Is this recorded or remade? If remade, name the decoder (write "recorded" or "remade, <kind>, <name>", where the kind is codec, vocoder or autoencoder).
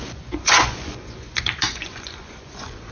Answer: remade, vocoder, Vocos